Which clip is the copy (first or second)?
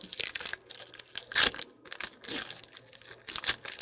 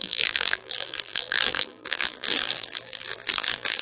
second